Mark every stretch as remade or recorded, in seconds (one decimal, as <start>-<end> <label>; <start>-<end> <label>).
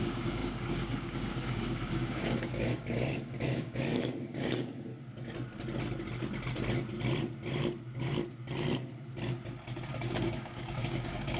0.0-4.9 remade; 4.9-9.9 recorded; 9.9-11.4 remade